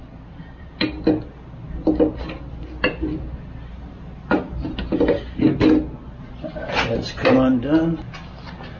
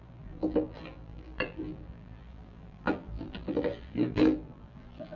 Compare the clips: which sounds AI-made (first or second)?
second